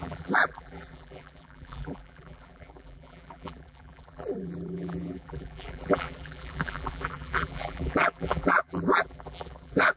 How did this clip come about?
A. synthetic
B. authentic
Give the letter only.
A